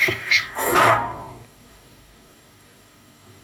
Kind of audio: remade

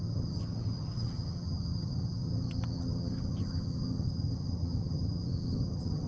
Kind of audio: remade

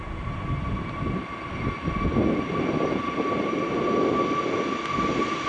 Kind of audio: recorded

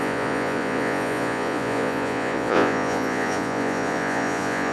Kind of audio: remade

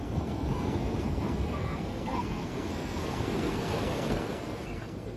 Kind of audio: remade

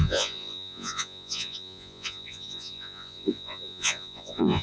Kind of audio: remade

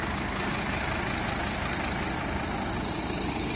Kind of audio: remade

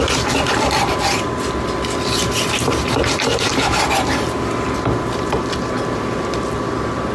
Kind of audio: remade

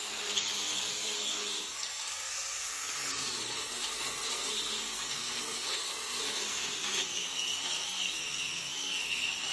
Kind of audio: remade